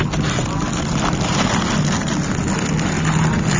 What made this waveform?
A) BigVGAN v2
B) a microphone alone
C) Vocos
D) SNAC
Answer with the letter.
B